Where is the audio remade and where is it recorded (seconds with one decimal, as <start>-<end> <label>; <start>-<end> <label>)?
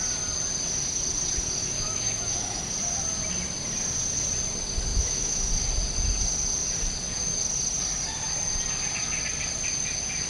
0.0-1.6 recorded; 1.6-2.6 remade; 2.6-4.9 recorded; 4.9-5.5 remade; 5.5-10.3 recorded